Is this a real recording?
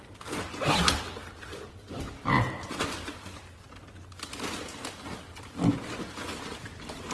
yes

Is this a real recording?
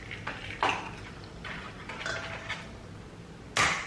yes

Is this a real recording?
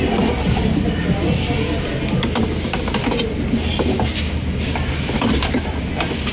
yes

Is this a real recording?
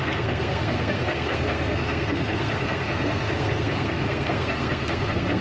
no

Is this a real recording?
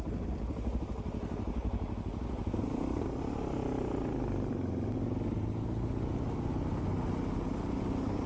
yes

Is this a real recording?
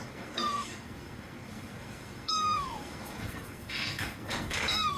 no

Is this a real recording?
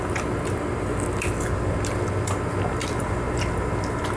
yes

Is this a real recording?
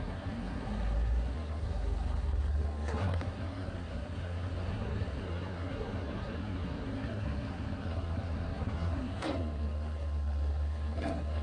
no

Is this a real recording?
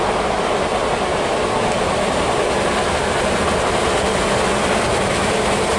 yes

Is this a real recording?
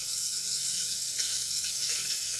no